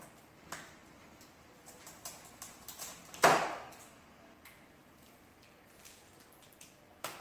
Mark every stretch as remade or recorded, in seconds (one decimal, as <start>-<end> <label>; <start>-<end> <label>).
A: 0.0-7.2 recorded